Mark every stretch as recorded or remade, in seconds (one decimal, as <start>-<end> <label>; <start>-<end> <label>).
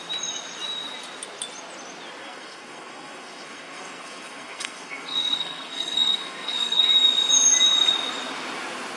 0.0-2.2 recorded; 2.2-6.9 remade; 6.9-9.0 recorded